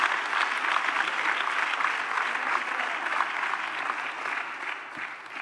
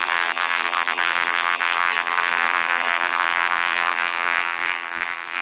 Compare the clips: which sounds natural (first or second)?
first